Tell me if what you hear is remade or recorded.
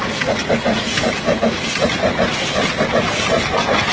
recorded